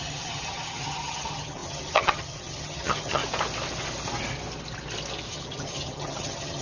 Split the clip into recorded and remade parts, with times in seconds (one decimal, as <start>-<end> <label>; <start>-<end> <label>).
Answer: 0.0-3.2 remade; 3.2-5.3 recorded; 5.3-6.6 remade